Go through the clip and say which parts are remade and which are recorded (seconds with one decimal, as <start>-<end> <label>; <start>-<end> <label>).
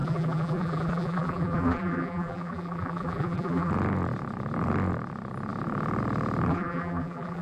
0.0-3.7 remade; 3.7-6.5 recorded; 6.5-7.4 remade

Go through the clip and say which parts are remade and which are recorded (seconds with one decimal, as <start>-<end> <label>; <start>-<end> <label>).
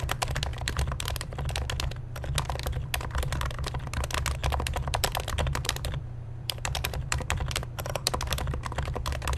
0.0-0.5 recorded; 0.5-1.5 remade; 1.5-4.4 recorded; 4.4-8.1 remade; 8.1-9.4 recorded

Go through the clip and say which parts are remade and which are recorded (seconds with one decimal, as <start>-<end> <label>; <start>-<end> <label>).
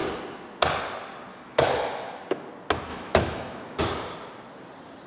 0.0-1.3 recorded; 1.3-2.5 remade; 2.5-2.9 recorded; 2.9-3.8 remade; 3.8-5.1 recorded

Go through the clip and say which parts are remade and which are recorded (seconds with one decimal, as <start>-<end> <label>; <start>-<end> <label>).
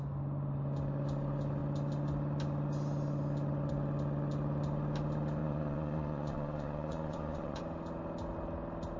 0.0-5.4 recorded; 5.4-7.6 remade; 7.6-9.0 recorded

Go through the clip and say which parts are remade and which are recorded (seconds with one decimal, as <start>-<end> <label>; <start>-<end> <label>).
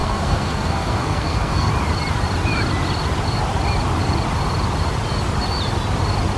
0.0-1.7 remade; 1.7-6.4 recorded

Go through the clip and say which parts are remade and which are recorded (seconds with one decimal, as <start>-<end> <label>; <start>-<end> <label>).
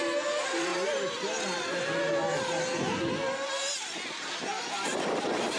0.0-5.6 recorded